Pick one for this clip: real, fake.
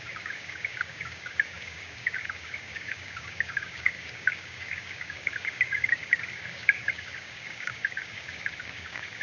fake